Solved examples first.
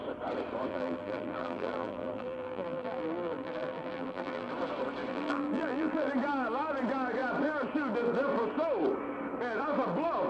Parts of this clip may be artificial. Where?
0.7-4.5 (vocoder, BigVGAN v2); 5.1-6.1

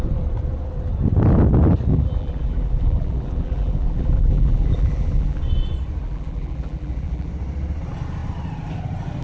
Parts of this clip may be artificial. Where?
1.9-5.4 (vocoder, BigVGAN v2); 6.0-7.3

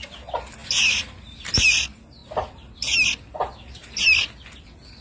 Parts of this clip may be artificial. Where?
none